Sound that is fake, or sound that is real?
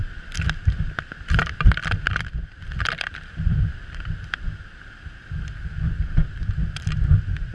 fake